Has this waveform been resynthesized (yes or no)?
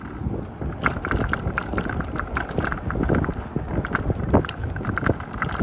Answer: no